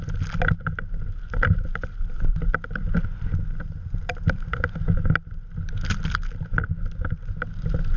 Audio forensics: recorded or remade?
recorded